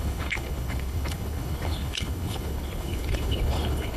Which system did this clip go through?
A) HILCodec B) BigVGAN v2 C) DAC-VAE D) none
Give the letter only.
A